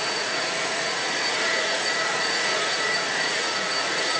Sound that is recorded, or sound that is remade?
remade